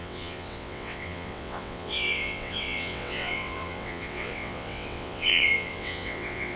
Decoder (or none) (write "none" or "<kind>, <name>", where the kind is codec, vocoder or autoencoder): vocoder, WaveNeXt